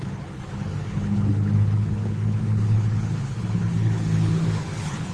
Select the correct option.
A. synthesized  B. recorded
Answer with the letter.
A